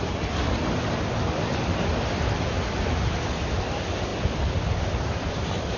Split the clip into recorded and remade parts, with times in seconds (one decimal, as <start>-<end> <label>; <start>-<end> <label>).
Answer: 0.0-5.8 recorded